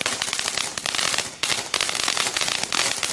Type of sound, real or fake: real